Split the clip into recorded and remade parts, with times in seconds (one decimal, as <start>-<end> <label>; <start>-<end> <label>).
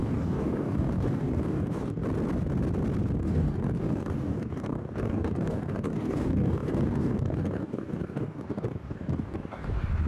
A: 0.0-2.0 remade; 2.0-3.2 recorded; 3.2-10.1 remade